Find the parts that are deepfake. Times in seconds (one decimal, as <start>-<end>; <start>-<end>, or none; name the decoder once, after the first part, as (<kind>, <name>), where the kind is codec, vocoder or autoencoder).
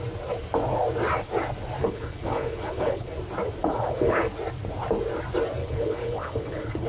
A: 1.8-3.1 (codec, HILCodec); 3.6-4.2; 5.6-6.9